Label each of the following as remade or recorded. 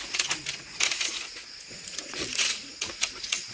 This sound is remade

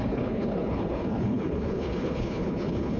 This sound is remade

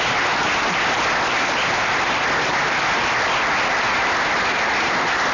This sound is recorded